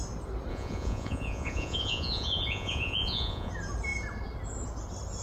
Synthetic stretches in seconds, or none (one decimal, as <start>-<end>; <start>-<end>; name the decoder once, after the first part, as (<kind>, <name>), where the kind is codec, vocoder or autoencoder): 0.5-3.5 (vocoder, Vocos)